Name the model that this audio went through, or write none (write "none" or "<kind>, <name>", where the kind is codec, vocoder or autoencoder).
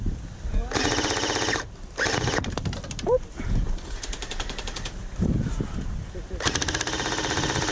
none